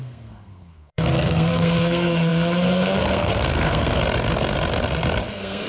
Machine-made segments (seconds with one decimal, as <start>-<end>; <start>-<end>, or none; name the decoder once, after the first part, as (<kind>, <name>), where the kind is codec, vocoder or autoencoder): 0.0-4.0 (codec, SNAC); 5.3-5.7